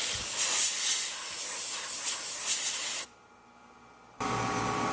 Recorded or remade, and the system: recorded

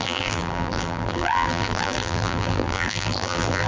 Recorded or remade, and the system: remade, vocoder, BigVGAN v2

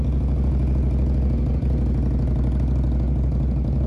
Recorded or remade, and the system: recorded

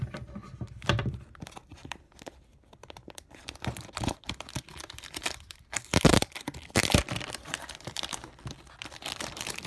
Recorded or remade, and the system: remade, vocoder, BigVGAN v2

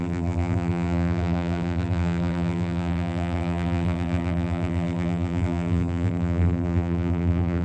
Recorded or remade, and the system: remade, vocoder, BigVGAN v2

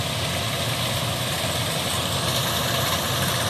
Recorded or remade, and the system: recorded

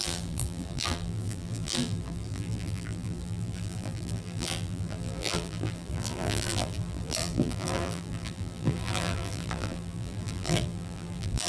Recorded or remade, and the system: remade, vocoder, BigVGAN v2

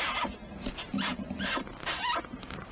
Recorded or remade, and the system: remade, vocoder, BigVGAN v2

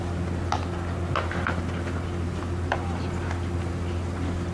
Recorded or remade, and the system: recorded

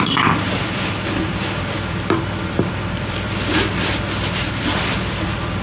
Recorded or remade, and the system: remade, vocoder, BigVGAN v2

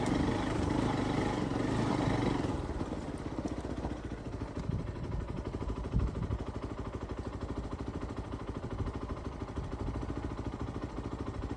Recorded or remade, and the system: recorded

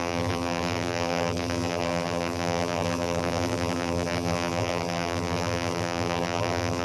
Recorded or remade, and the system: remade, vocoder, BigVGAN v2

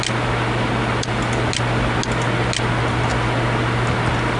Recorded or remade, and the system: recorded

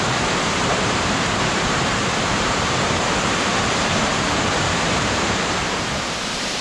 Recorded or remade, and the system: remade, vocoder, BigVGAN v2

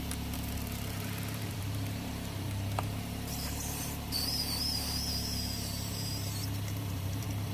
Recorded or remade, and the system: remade, vocoder, BigVGAN v2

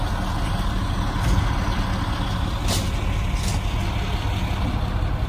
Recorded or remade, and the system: recorded